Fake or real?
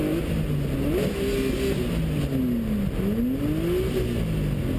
real